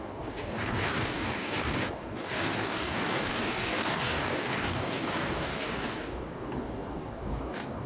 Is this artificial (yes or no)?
yes